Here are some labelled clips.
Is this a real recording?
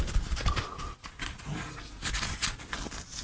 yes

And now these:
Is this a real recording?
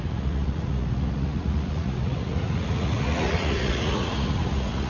no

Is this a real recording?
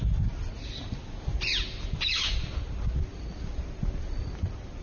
yes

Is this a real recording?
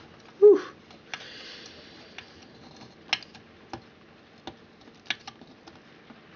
yes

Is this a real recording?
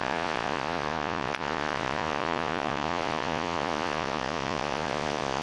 no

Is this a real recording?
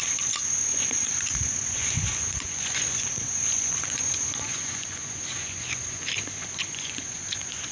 no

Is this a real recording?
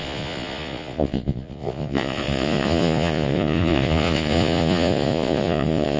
no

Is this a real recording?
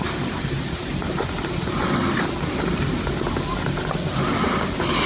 yes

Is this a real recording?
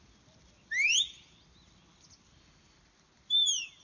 yes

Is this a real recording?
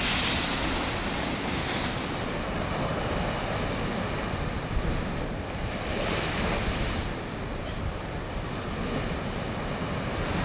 yes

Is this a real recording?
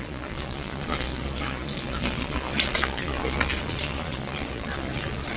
no